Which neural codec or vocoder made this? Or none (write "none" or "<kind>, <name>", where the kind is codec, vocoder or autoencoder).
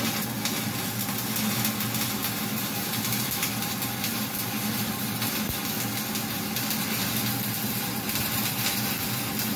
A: none